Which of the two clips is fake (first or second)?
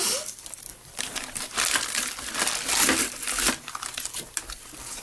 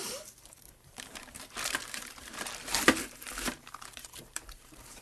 second